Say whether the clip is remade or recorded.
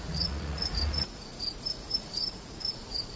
remade